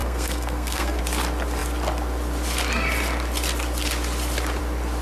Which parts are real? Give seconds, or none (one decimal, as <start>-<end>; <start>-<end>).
1.0-5.0